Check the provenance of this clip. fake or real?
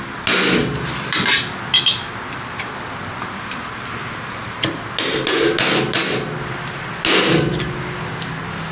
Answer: real